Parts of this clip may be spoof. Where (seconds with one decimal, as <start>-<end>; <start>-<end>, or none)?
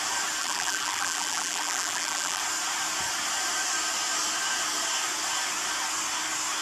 0.4-2.4